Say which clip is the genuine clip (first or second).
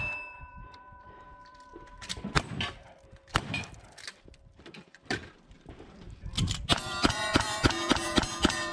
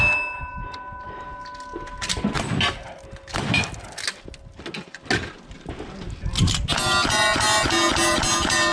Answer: second